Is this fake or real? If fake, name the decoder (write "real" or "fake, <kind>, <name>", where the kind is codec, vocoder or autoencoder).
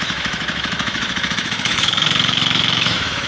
fake, autoencoder, DAC-VAE